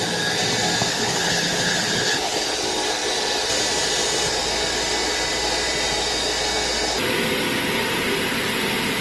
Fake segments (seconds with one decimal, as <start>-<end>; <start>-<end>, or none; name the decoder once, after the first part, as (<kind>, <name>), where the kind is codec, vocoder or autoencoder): 0.9-2.5 (codec, HILCodec)